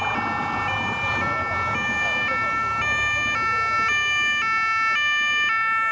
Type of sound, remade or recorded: recorded